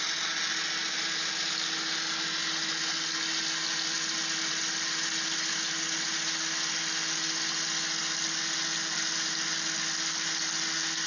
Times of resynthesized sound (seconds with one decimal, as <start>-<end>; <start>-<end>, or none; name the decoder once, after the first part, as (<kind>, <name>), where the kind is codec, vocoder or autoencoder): none